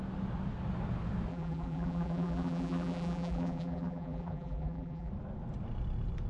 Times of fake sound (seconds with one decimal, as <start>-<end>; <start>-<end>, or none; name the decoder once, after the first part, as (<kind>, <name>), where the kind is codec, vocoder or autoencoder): 1.3-5.1 (vocoder, BigVGAN v2)